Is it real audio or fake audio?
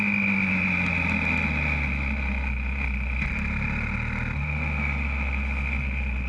real